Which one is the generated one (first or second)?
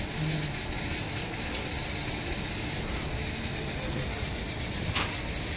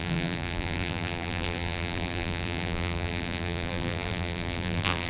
second